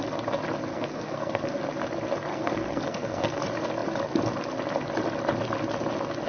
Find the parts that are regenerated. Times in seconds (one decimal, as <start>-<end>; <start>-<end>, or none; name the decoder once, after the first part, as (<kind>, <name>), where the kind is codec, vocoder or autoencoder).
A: 0.7-1.6 (codec, SNAC); 2.3-3.4